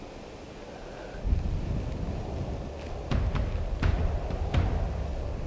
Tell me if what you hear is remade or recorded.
recorded